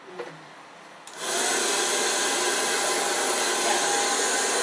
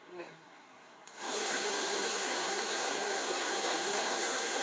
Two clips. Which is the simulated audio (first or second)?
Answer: second